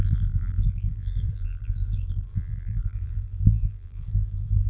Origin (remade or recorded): remade